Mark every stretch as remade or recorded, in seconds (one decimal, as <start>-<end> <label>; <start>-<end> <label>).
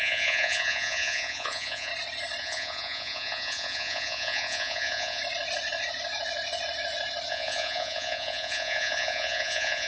0.0-1.9 remade; 1.9-2.4 recorded; 2.4-5.2 remade; 5.2-7.3 recorded; 7.3-9.9 remade